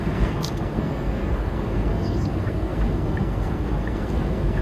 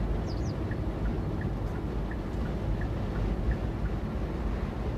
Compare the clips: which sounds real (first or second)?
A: second